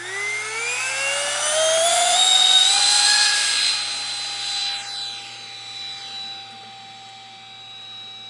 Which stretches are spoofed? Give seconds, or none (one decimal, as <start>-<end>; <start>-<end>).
1.9-3.7